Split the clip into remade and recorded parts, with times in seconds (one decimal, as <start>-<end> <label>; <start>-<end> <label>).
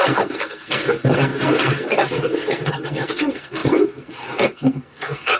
0.0-5.4 remade